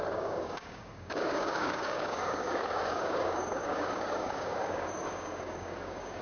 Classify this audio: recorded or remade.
remade